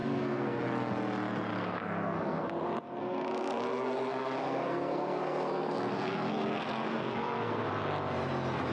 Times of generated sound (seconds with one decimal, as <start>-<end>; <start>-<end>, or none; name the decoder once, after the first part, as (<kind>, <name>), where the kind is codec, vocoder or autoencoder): 0.0-0.6 (codec, SNAC); 1.5-2.5; 3.0-7.7

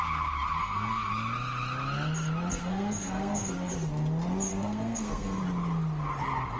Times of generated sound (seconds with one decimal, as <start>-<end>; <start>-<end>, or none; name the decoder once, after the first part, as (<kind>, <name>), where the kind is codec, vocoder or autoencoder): 0.6-1.1 (codec, SNAC); 2.5-3.7; 4.5-5.4